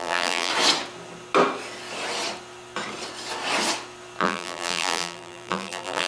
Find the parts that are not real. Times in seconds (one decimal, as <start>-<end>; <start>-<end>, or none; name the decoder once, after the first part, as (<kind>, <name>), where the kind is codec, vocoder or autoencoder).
0.0-0.5 (vocoder, BigVGAN v2); 4.2-6.1